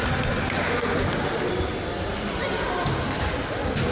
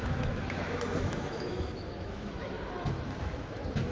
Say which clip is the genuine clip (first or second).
first